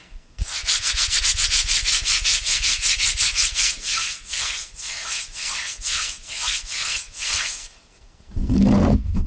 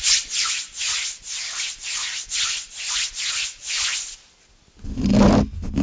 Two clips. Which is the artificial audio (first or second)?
first